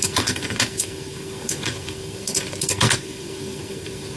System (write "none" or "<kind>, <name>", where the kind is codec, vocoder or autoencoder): codec, SNAC